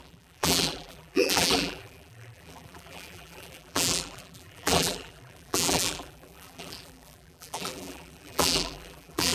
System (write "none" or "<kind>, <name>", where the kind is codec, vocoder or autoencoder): vocoder, BigVGAN v2